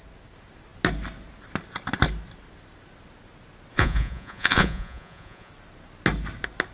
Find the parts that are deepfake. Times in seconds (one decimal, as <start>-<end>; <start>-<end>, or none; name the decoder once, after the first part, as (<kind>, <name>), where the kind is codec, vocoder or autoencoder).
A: 3.7-5.5 (vocoder, Vocos)